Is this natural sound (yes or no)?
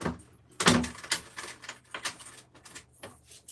yes